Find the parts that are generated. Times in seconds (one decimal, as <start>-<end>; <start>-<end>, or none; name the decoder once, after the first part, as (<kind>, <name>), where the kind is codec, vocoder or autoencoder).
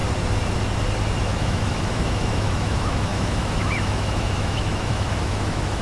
1.2-5.8 (autoencoder, DAC-VAE)